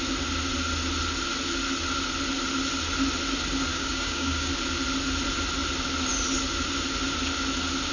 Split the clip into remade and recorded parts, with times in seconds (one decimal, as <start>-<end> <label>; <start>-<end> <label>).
0.0-3.7 recorded; 3.7-4.5 remade; 4.5-7.9 recorded